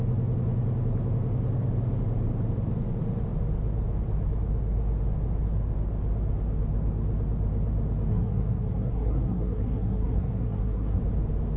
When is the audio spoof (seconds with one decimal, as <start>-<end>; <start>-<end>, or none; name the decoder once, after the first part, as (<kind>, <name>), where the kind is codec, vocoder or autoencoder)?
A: 8.1-11.0 (codec, SNAC)